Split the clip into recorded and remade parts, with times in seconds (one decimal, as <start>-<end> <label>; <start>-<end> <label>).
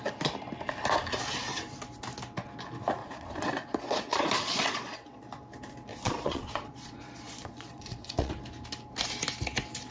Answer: 0.0-3.0 recorded; 3.0-5.2 remade; 5.2-5.9 recorded; 5.9-8.3 remade; 8.3-9.9 recorded